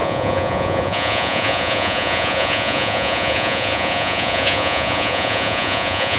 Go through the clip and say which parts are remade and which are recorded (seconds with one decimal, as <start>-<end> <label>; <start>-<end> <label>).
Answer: 0.0-6.2 remade